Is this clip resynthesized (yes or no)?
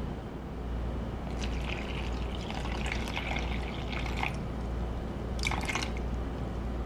no